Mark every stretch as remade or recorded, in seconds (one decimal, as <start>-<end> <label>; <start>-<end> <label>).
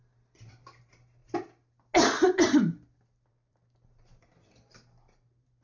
0.0-5.6 recorded